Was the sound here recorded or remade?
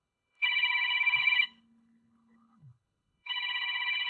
remade